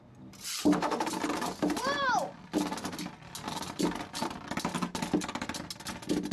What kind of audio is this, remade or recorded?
recorded